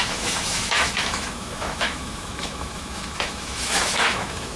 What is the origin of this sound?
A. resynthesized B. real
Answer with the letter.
A